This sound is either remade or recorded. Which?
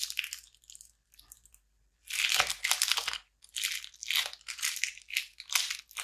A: recorded